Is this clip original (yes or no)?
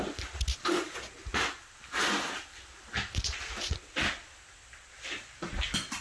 yes